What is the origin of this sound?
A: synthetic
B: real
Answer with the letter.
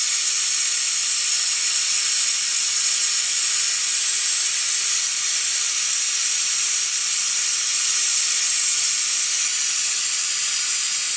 B